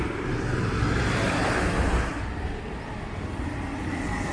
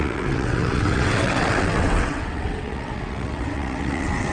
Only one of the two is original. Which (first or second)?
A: first